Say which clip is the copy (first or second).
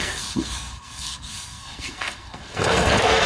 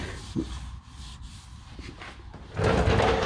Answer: first